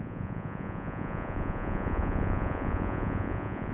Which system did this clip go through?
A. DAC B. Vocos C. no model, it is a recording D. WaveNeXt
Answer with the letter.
B